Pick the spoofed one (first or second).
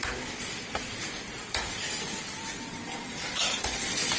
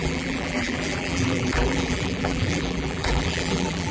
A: second